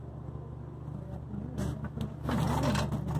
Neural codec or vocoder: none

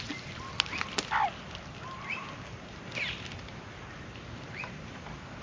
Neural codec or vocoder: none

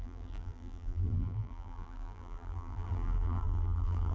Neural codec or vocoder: vocoder, BigVGAN v2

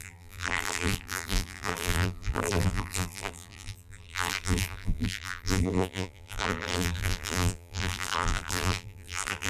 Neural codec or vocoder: vocoder, BigVGAN v2